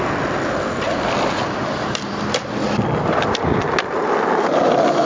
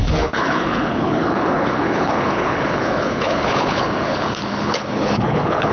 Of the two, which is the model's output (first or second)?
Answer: second